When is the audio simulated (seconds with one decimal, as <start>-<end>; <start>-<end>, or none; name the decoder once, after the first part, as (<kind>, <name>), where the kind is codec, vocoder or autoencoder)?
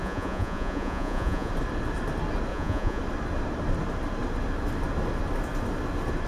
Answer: 0.0-1.5 (vocoder, Vocos); 2.5-3.0